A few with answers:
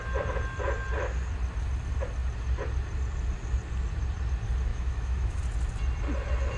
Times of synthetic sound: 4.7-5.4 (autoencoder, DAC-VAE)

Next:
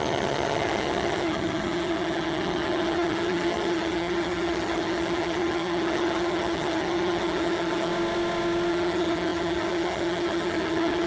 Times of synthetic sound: 0.0-7.9 (vocoder, HiFi-GAN); 8.7-11.1

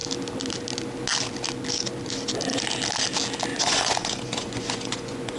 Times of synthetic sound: 3.5-5.4 (vocoder, Vocos)

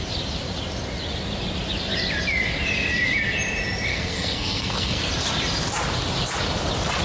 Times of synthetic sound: 3.9-5.1 (codec, SNAC)

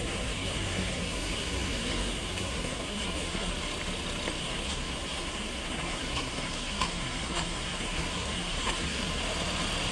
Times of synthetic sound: 0.0-3.5 (codec, SNAC); 4.4-9.2